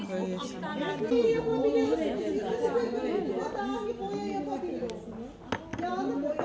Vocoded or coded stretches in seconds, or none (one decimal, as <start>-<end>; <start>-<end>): 5.7-6.4